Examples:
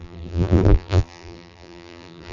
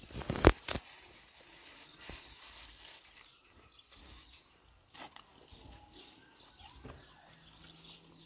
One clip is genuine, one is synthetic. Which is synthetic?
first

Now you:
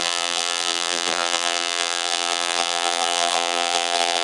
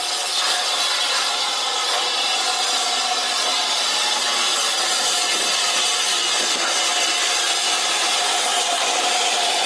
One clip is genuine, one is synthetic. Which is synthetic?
first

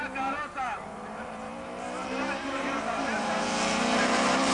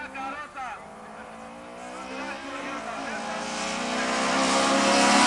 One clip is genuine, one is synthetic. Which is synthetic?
first